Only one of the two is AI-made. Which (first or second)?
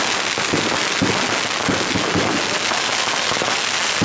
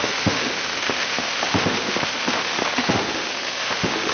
second